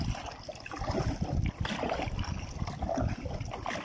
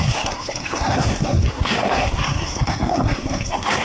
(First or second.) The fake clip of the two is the second